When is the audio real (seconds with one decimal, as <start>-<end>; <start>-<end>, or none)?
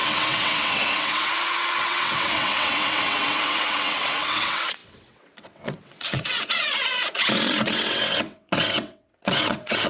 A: none